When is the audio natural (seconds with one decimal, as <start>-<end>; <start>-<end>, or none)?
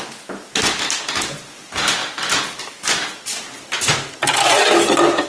0.0-5.3